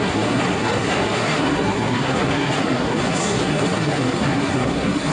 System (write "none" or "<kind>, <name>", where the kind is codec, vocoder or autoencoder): codec, SNAC